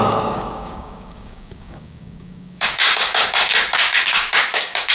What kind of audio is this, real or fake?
fake